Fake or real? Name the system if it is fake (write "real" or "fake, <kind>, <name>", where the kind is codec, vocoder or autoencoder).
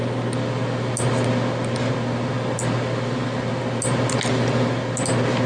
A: real